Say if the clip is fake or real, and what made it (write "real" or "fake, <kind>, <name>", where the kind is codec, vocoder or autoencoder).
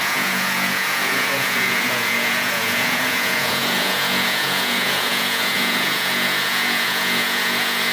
fake, vocoder, Vocos